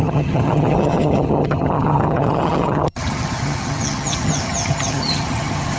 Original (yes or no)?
no